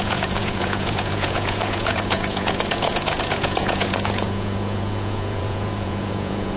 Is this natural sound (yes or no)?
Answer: no